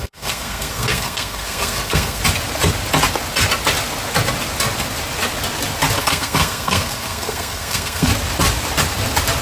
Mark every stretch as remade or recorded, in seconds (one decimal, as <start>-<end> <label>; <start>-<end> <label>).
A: 0.0-2.2 remade; 2.2-6.0 recorded; 6.0-8.1 remade; 8.1-9.4 recorded